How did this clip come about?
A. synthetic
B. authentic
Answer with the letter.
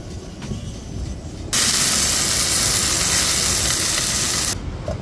B